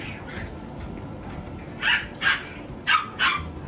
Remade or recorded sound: recorded